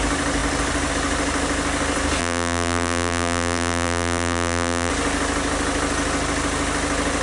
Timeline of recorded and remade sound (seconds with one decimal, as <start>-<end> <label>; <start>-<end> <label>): 0.0-2.2 recorded; 2.2-4.9 remade; 4.9-7.2 recorded